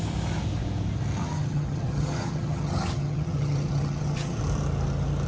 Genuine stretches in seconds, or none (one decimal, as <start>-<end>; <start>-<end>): 0.0-1.2; 4.4-5.3